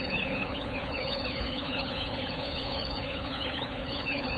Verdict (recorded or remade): remade